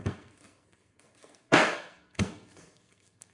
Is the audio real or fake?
fake